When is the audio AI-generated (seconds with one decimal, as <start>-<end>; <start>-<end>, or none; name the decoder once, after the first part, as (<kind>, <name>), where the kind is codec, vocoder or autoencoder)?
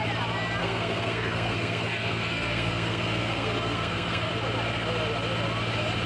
0.6-4.3 (codec, SNAC)